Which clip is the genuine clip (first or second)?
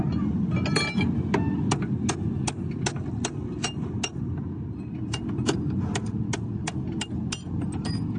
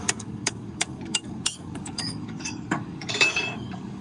first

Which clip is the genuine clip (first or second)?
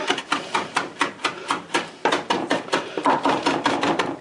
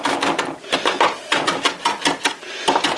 second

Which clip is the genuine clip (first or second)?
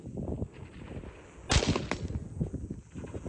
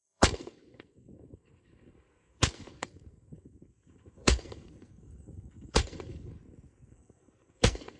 first